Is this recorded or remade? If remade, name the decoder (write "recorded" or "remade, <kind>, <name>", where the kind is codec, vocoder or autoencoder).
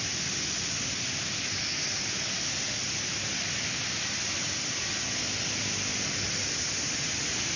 recorded